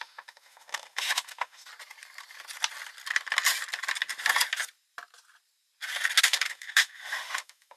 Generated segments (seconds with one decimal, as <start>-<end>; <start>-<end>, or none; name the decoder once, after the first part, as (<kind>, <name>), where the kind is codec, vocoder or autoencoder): 0.0-1.7 (autoencoder, DAC-VAE); 6.2-7.8